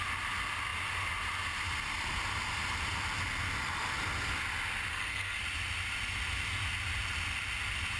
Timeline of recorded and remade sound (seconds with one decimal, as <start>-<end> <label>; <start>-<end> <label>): 0.0-4.9 recorded; 4.9-5.4 remade; 5.4-8.0 recorded